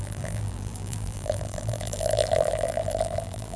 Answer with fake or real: fake